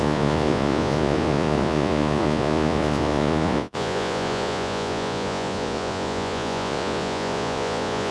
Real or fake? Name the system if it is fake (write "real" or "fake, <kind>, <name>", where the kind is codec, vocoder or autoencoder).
fake, vocoder, Vocos